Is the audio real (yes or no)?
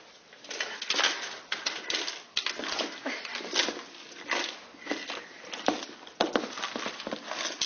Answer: yes